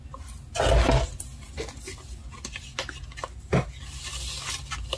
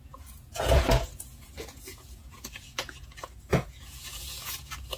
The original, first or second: first